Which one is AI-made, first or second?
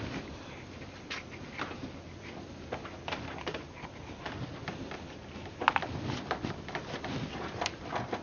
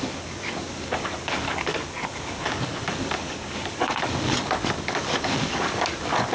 second